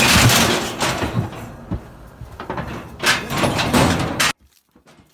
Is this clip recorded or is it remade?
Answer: recorded